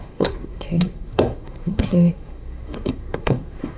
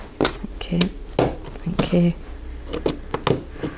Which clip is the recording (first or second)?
second